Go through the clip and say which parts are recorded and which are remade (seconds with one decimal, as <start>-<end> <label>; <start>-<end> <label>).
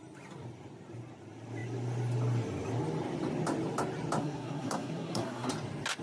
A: 0.0-4.2 recorded; 4.2-5.5 remade; 5.5-6.0 recorded